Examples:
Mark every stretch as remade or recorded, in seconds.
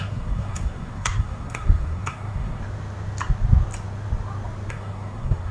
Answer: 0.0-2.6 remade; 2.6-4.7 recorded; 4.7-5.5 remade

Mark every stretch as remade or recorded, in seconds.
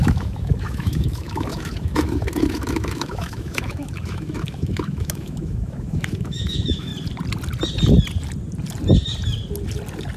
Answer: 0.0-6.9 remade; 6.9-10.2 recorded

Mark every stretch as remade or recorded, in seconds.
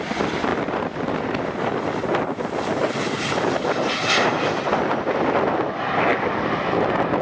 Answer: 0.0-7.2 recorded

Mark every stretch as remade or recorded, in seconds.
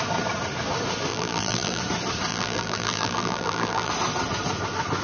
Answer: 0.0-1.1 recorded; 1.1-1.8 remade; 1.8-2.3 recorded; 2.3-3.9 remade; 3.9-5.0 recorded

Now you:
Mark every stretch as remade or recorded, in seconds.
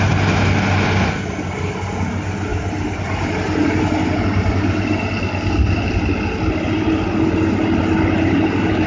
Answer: 0.0-8.9 recorded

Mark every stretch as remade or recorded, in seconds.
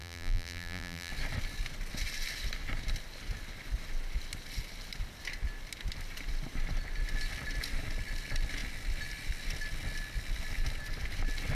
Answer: 0.0-1.1 remade; 1.1-11.5 recorded